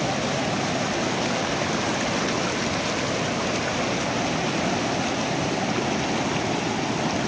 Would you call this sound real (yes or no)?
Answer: yes